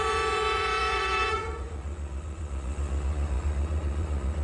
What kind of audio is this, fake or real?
fake